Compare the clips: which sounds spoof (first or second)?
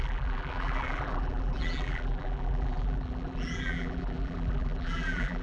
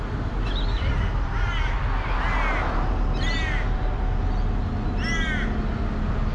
first